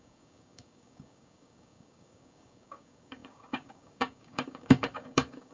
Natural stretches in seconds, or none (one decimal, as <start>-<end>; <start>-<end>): none